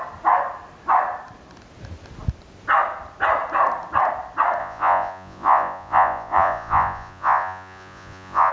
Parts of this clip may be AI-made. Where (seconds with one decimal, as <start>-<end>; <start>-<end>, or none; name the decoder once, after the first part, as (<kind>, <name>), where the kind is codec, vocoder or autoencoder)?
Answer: 4.6-8.5 (vocoder, Vocos)